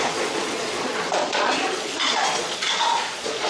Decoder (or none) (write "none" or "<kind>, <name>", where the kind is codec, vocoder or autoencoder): vocoder, Vocos